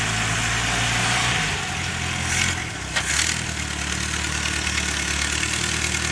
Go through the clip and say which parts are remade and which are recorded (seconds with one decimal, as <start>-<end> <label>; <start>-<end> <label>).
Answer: 0.0-1.0 recorded; 1.0-1.9 remade; 1.9-6.1 recorded